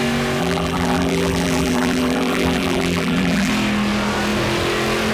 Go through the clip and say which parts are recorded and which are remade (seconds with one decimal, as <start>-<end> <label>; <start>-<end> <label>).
0.0-0.4 recorded; 0.4-3.5 remade; 3.5-5.1 recorded